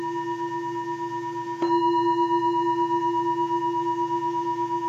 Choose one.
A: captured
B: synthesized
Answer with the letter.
B